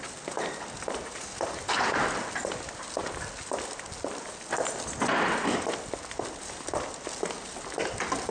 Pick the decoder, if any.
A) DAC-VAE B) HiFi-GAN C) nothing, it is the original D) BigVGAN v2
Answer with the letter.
C